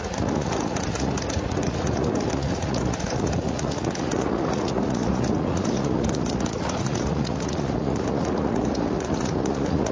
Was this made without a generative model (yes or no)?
no